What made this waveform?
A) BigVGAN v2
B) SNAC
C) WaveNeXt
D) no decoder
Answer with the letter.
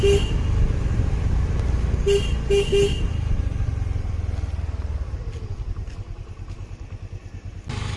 D